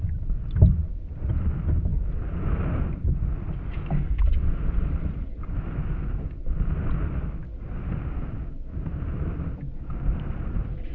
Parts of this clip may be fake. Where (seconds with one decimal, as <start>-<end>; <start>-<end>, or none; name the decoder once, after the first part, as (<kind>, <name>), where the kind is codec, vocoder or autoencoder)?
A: none